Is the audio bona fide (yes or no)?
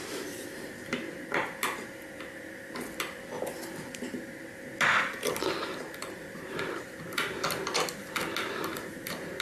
yes